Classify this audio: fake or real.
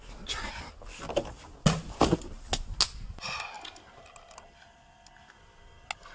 real